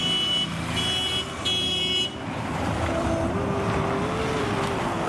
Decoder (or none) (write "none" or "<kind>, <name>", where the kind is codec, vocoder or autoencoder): none